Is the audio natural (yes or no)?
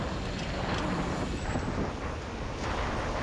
yes